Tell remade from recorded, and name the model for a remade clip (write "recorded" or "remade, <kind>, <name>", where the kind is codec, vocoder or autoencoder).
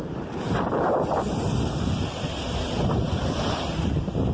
recorded